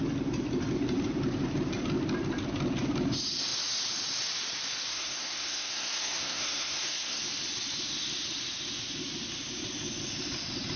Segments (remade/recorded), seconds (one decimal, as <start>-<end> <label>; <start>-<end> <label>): 0.0-4.9 recorded; 4.9-7.2 remade; 7.2-10.8 recorded